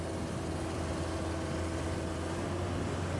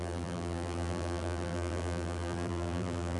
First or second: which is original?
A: first